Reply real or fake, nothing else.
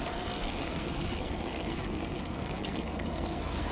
fake